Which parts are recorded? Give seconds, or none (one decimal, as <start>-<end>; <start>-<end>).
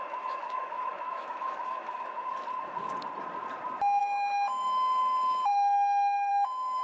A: 2.3-4.0